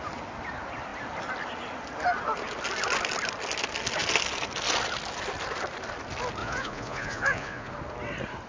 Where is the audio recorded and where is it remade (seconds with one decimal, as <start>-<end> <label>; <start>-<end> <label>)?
0.0-6.4 recorded; 6.4-7.7 remade; 7.7-8.5 recorded